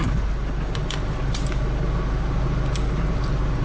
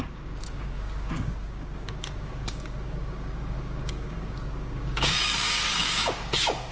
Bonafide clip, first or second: first